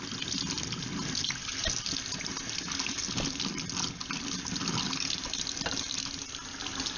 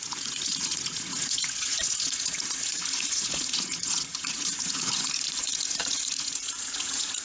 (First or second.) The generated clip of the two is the second